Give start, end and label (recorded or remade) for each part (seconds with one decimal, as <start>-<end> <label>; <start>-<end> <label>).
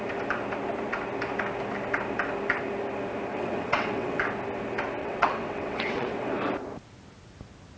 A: 0.0-3.3 recorded; 3.3-4.2 remade; 4.2-5.0 recorded; 5.0-6.3 remade; 6.3-7.8 recorded